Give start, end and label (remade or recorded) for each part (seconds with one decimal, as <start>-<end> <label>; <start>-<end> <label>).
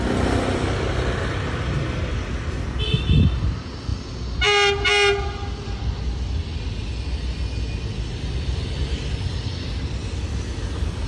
0.0-11.1 recorded